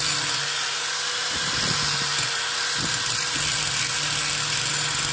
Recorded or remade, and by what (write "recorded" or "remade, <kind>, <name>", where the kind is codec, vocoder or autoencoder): recorded